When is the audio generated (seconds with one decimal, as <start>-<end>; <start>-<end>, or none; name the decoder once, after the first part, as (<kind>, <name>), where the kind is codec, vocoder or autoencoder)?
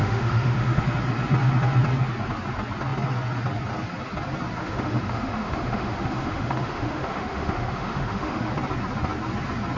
0.0-0.8 (autoencoder, DAC-VAE); 4.6-8.5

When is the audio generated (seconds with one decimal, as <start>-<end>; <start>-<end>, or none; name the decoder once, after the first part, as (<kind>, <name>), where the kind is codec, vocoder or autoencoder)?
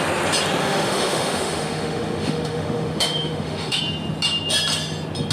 0.6-3.8 (autoencoder, DAC-VAE)